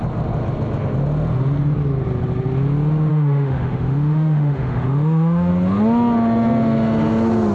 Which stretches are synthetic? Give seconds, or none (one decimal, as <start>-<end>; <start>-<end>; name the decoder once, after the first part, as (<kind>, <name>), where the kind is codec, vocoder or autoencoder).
3.1-5.5 (autoencoder, DAC-VAE)